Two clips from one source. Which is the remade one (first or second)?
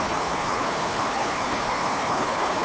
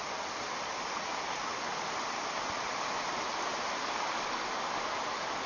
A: first